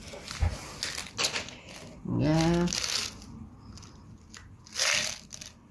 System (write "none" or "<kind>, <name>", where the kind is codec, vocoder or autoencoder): none